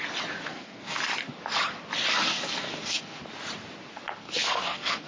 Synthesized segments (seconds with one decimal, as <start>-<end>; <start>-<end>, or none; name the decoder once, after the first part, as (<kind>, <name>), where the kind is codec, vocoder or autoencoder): 0.4-1.0 (codec, SNAC); 2.3-3.2; 4.2-5.1